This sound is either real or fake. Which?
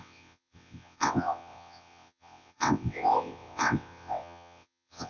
fake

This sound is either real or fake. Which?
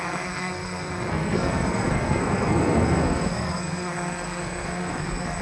fake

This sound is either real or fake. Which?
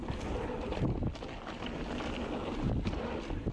real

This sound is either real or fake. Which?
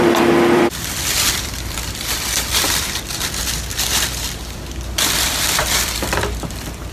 fake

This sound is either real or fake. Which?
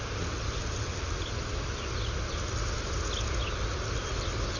real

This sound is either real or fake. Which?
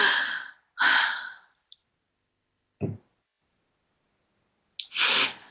real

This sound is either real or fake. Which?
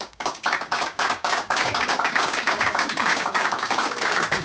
fake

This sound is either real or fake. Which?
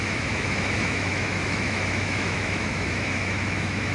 fake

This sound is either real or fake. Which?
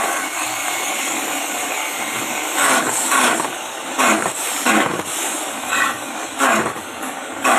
fake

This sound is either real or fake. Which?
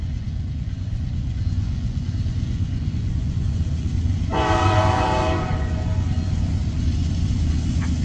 fake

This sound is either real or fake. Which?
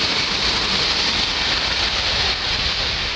real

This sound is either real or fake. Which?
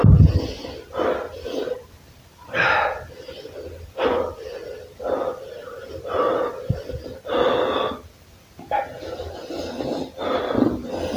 real